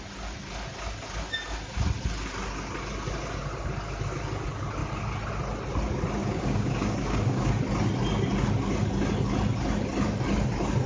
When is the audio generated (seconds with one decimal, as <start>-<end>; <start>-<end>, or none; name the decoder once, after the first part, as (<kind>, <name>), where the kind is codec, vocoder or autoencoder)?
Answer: 6.2-7.5 (codec, DAC)

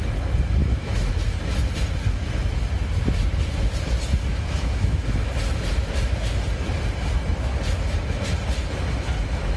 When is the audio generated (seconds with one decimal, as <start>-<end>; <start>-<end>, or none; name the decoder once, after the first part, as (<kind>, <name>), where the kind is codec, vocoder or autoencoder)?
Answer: 0.6-1.1 (autoencoder, DAC-VAE); 4.3-5.3

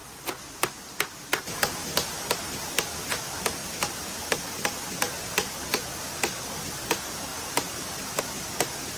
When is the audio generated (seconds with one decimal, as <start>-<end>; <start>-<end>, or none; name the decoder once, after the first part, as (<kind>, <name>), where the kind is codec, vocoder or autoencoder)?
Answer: none

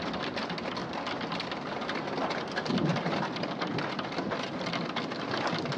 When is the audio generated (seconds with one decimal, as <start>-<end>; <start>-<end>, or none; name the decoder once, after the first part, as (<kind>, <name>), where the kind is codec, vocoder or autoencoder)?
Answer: 0.0-0.8 (vocoder, BigVGAN v2); 2.7-3.7

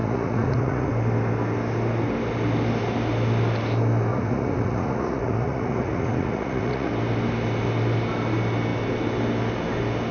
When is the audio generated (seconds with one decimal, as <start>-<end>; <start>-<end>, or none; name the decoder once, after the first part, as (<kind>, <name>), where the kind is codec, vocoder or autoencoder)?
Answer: 0.0-0.9 (vocoder, Vocos); 4.1-6.9

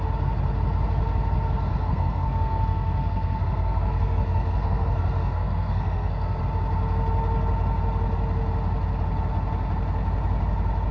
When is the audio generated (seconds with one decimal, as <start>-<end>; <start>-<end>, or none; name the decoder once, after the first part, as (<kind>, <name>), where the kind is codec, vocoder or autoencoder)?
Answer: 1.7-6.4 (codec, SNAC)

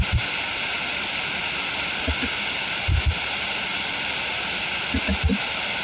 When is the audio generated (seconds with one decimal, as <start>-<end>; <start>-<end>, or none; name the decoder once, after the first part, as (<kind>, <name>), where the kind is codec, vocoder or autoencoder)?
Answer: none

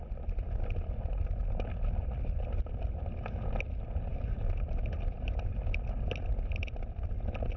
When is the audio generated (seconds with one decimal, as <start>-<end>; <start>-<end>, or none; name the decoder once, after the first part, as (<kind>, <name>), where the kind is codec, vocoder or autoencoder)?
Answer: none